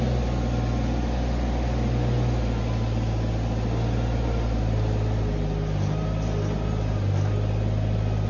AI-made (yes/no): no